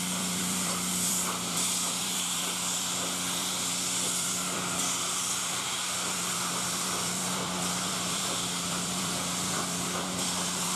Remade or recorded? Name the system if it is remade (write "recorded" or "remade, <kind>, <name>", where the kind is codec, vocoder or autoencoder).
remade, vocoder, BigVGAN v2